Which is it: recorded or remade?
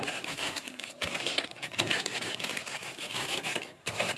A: remade